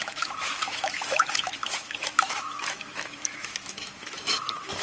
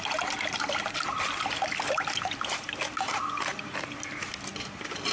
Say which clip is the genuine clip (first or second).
second